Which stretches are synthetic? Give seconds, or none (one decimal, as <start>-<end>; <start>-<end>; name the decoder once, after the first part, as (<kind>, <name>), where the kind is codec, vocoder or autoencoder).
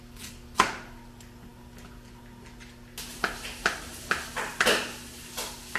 none